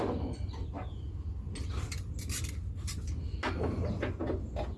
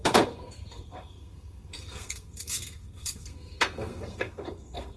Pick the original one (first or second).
first